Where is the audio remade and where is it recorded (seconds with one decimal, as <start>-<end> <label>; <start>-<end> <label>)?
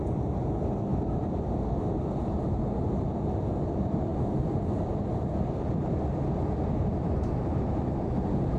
0.0-8.6 recorded